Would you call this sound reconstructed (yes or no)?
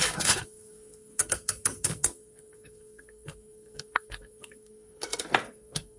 yes